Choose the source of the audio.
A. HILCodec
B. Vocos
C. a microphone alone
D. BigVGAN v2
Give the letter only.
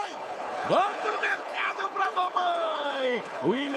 A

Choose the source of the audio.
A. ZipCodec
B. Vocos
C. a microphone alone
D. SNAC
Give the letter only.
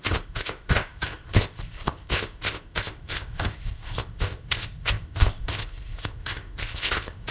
A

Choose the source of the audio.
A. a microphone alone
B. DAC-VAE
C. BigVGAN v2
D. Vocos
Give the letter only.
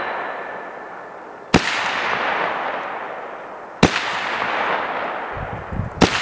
A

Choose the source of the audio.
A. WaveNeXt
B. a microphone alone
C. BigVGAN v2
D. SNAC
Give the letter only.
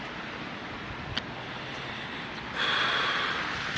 B